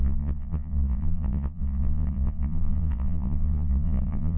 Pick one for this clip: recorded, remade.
remade